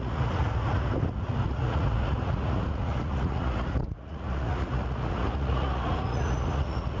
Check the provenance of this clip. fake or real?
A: fake